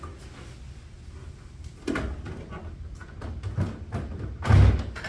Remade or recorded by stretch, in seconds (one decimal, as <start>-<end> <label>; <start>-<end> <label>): 0.0-5.1 recorded